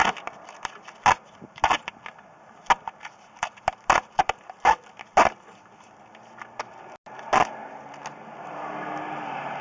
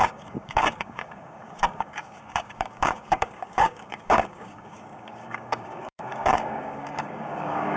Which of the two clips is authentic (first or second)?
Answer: first